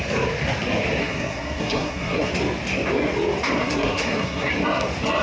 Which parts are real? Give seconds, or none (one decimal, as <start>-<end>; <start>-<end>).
0.0-1.0; 2.3-3.6; 4.5-5.2

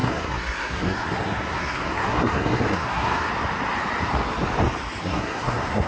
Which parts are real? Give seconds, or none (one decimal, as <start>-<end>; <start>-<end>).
3.3-5.0

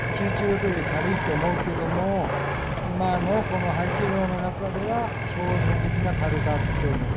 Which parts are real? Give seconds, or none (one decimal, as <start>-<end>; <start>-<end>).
0.0-7.2

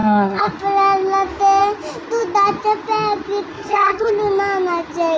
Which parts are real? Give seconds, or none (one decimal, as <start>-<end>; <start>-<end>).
0.5-3.5; 4.1-5.2

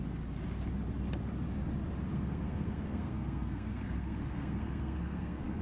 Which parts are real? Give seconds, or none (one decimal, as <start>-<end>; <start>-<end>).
0.0-2.1

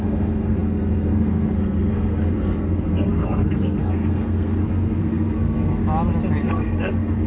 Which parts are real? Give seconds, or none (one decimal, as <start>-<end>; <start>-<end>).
5.8-6.4

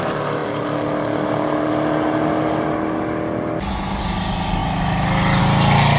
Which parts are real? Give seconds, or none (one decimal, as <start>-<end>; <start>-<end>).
0.0-6.0